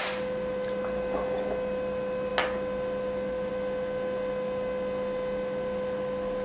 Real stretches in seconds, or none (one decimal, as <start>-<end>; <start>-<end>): 0.0-6.4